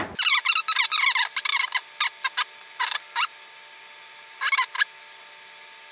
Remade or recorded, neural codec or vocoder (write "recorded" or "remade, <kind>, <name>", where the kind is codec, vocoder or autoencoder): recorded